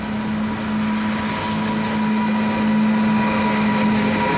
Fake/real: real